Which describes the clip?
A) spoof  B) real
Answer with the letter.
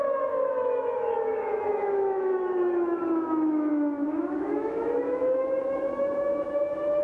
A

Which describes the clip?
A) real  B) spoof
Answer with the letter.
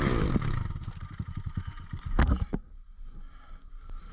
A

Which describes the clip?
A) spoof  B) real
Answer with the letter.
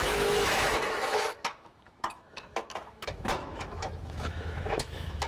A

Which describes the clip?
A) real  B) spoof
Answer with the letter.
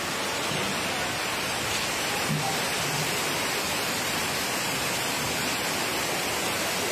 A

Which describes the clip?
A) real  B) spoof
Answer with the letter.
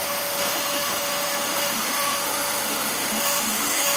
B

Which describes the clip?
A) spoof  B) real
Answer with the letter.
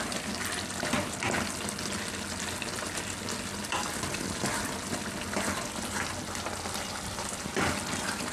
B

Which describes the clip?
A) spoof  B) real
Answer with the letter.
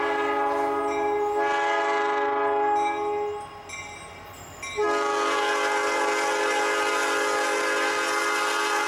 B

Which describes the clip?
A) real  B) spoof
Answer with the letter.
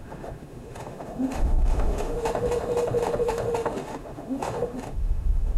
B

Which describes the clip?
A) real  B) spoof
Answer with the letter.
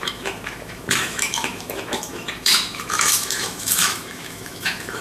B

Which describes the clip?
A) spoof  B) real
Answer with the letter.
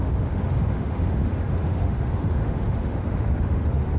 A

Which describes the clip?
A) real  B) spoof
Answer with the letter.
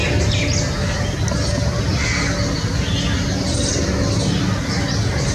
A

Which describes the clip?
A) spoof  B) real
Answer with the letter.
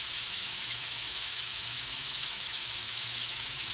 A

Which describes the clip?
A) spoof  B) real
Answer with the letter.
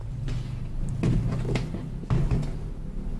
B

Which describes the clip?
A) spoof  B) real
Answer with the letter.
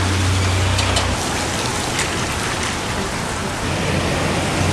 B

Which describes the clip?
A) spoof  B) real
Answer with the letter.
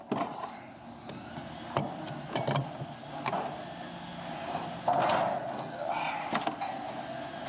B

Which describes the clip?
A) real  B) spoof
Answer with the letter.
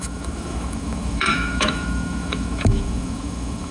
B